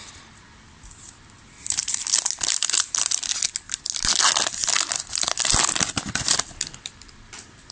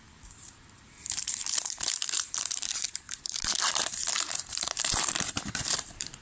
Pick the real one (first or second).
first